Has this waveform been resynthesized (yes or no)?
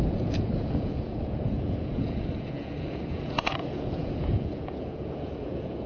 yes